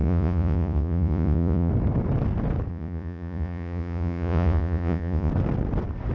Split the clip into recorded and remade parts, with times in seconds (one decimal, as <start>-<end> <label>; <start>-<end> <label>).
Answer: 0.0-1.7 remade; 1.7-2.7 recorded; 2.7-5.3 remade; 5.3-6.1 recorded